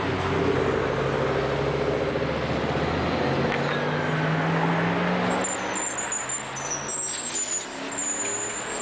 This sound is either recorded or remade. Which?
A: recorded